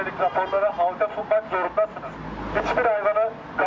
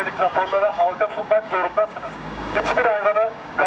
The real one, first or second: first